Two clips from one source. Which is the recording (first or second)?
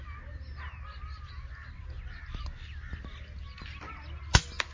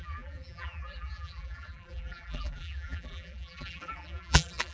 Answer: first